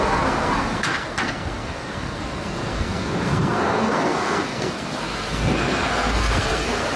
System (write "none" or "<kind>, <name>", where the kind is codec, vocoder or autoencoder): codec, SNAC